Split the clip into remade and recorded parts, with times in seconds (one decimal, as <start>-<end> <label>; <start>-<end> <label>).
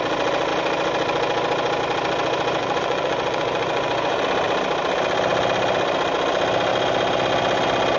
0.0-2.6 recorded; 2.6-4.2 remade; 4.2-8.0 recorded